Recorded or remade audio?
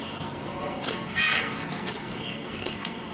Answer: remade